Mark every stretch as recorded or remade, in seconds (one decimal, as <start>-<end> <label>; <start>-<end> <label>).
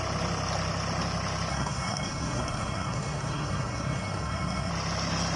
0.0-1.5 recorded; 1.5-4.7 remade; 4.7-5.4 recorded